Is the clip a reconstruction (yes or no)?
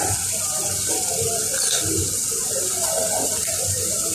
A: no